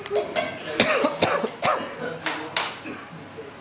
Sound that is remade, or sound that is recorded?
recorded